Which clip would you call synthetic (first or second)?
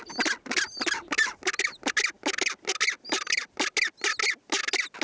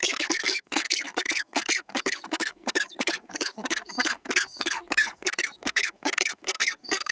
second